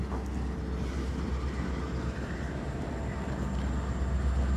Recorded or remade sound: recorded